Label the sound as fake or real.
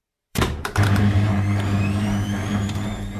fake